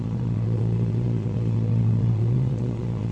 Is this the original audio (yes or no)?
no